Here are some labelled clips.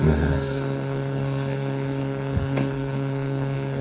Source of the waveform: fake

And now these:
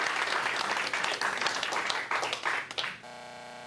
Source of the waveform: real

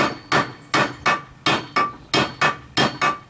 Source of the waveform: real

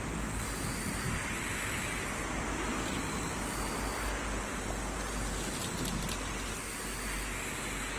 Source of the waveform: real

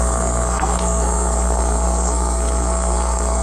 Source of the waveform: fake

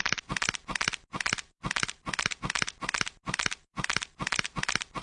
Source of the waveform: real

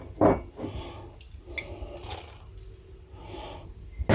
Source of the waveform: real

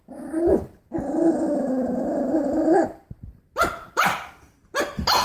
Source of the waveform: real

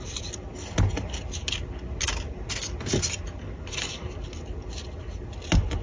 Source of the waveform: real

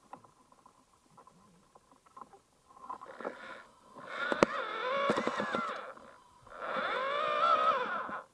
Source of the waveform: real